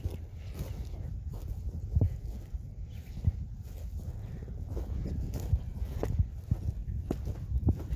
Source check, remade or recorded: recorded